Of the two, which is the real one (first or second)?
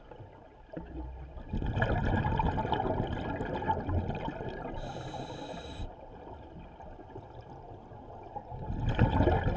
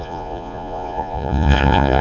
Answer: first